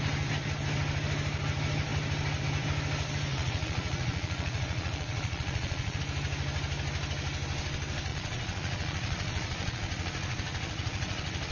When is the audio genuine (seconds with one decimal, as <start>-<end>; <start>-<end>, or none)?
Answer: 0.0-3.3; 6.0-8.1